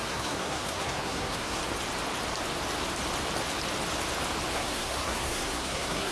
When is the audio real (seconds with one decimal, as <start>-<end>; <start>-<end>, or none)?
1.6-4.5